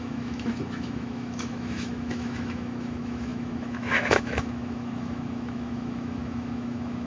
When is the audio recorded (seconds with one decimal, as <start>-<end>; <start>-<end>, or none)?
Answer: none